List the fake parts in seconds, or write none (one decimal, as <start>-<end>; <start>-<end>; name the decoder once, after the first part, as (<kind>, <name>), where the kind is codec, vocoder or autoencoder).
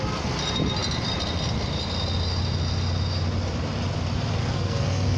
4.4-5.2 (codec, SNAC)